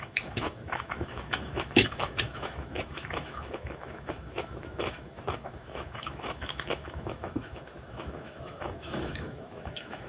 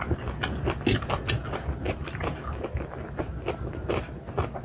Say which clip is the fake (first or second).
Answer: first